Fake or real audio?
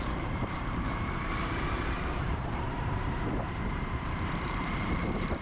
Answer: fake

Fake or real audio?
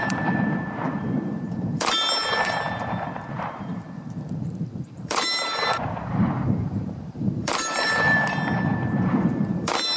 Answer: fake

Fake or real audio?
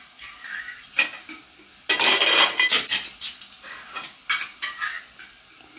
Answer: real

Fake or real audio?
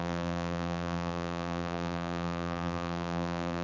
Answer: fake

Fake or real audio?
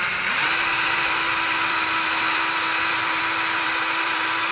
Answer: fake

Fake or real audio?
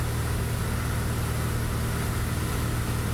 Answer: real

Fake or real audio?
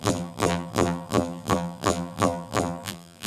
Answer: fake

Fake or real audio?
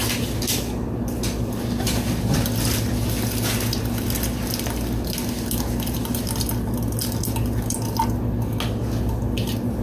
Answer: real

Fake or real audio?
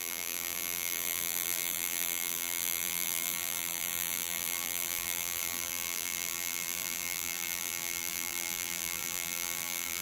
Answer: fake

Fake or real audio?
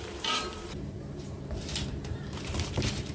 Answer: fake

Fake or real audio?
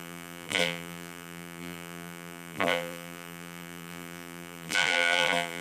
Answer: fake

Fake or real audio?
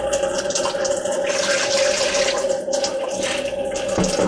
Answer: fake